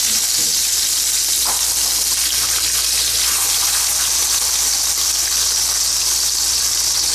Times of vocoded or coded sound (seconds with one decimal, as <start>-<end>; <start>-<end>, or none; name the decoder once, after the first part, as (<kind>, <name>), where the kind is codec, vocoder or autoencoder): none